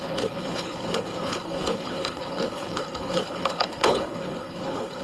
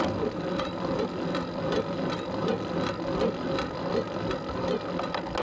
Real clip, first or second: second